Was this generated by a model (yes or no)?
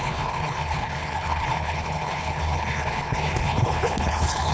yes